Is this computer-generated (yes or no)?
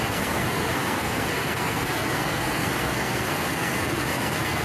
yes